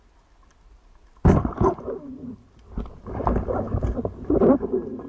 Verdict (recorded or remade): recorded